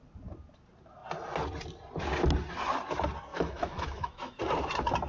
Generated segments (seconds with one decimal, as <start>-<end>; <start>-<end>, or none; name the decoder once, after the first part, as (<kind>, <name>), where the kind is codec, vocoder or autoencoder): 3.3-4.4 (autoencoder, DAC-VAE)